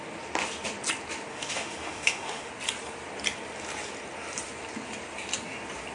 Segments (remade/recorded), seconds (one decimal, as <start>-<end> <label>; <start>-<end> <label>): 0.0-1.3 recorded; 1.3-2.5 remade; 2.5-5.9 recorded